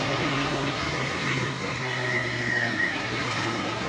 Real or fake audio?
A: fake